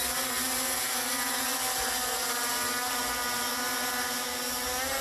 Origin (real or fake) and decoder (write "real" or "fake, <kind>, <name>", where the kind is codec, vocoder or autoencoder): real